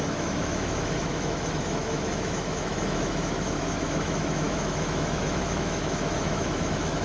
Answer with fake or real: fake